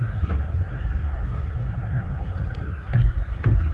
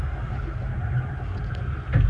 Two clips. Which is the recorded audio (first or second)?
second